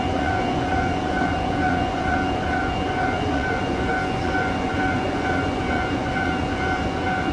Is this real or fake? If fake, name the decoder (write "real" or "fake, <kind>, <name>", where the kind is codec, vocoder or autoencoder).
fake, vocoder, Vocos